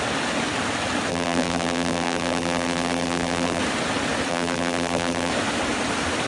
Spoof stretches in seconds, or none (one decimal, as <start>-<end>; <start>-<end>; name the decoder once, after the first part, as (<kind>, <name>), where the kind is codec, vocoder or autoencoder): 1.1-3.6 (vocoder, BigVGAN v2); 4.3-5.3